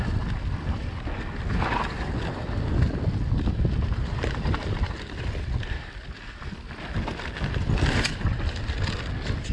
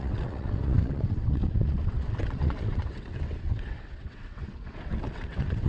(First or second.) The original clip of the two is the first